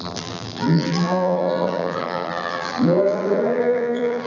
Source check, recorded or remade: remade